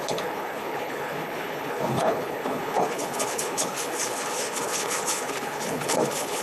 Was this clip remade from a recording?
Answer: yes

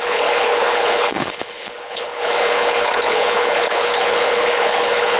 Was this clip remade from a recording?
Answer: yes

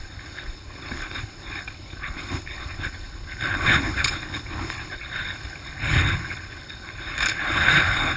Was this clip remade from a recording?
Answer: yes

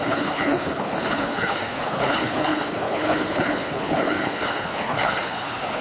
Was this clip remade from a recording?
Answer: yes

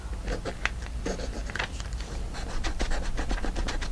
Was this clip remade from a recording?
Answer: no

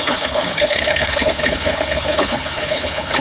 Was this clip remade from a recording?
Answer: yes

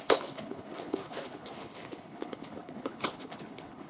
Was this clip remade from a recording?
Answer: yes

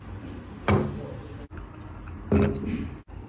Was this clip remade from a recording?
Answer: no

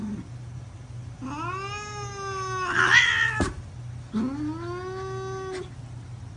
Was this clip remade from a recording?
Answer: no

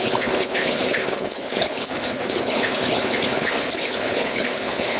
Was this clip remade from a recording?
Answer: yes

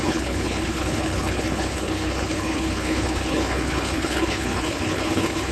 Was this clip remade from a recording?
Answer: yes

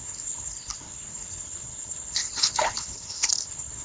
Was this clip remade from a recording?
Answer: yes